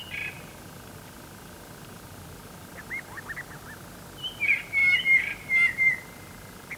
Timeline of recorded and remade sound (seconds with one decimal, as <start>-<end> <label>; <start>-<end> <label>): 0.0-3.2 remade; 3.2-4.8 recorded; 4.8-6.8 remade